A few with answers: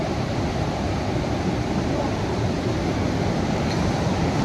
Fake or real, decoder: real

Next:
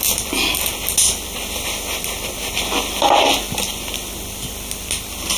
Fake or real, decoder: real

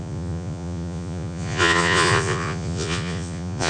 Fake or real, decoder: fake, vocoder, Vocos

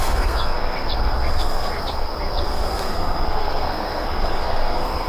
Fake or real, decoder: fake, codec, SNAC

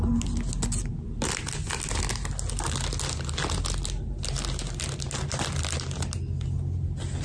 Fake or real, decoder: real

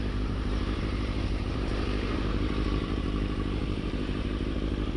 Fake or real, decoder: fake, vocoder, BigVGAN v2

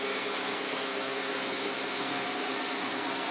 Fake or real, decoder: fake, codec, SNAC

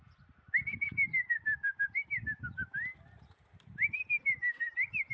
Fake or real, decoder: fake, vocoder, BigVGAN v2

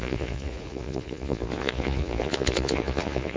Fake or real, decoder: fake, vocoder, Vocos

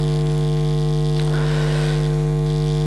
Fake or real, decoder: real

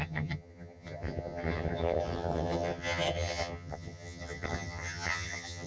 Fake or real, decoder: fake, vocoder, HiFi-GAN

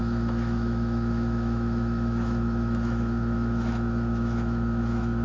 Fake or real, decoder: fake, autoencoder, DAC-VAE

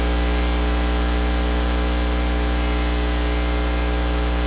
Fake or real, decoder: real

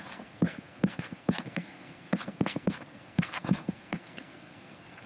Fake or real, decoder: fake, codec, SNAC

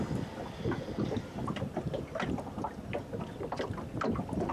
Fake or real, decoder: real